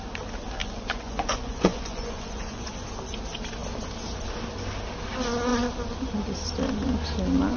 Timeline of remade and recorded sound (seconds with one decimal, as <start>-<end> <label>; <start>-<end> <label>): 0.0-0.6 recorded; 0.6-2.7 remade; 2.7-7.6 recorded